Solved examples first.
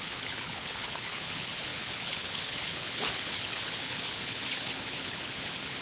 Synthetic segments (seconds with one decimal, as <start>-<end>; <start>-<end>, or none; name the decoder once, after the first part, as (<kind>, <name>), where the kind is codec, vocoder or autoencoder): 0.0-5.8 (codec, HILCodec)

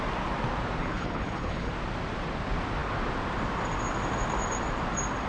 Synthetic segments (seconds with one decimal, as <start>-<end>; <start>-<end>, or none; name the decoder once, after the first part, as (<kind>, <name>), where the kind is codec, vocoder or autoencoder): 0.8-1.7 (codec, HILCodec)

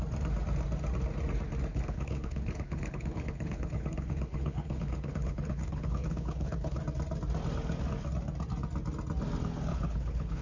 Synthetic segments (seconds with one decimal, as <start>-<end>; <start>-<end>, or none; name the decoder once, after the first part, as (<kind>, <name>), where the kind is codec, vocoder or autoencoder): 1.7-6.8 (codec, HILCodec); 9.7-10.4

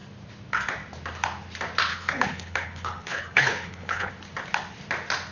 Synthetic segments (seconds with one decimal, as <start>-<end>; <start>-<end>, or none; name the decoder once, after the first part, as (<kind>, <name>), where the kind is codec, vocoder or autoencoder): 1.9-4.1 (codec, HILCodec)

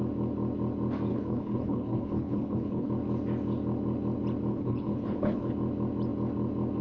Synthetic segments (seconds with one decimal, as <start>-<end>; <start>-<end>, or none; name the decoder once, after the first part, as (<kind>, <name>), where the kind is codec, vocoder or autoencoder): 1.1-2.9 (codec, HILCodec); 4.5-5.5

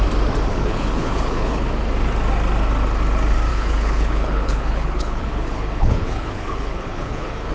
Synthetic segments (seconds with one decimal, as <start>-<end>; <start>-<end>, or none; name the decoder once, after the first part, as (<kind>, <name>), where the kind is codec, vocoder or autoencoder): 0.5-1.7 (codec, HILCodec); 3.5-7.5

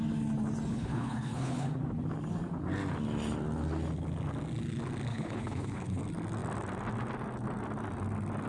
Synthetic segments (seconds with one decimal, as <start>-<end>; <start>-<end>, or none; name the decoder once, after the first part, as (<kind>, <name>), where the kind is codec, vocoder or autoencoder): 0.7-1.7 (codec, HILCodec); 5.1-6.0